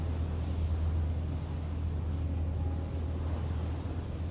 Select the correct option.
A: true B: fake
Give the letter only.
A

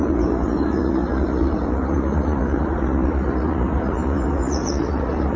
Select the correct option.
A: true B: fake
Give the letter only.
B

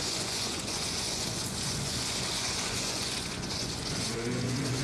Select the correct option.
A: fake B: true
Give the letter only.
A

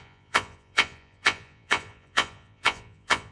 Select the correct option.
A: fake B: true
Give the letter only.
A